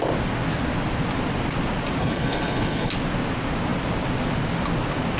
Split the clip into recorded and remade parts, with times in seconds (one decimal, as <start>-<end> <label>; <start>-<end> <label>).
0.0-2.0 recorded; 2.0-2.9 remade; 2.9-5.2 recorded